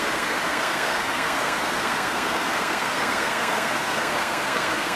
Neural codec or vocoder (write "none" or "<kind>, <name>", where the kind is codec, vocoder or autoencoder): codec, SNAC